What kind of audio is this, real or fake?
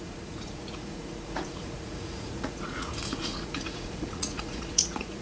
fake